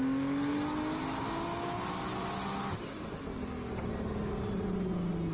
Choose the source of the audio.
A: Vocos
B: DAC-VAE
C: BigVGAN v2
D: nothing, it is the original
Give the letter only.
D